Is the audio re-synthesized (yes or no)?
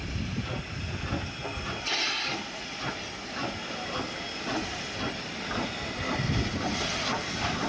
no